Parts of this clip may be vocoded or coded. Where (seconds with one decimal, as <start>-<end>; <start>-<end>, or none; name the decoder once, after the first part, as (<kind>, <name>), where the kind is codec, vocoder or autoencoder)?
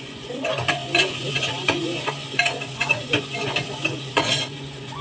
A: 0.0-5.0 (vocoder, Vocos)